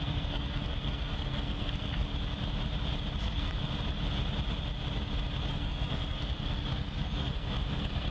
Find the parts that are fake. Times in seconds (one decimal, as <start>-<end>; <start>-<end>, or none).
0.0-2.1; 3.2-3.6; 5.5-8.1